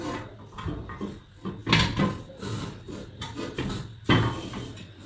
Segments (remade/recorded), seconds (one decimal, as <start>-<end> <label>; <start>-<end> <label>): 0.0-5.1 recorded